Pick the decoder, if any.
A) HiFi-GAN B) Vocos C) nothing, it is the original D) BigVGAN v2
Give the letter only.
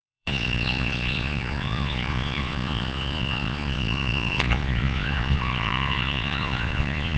B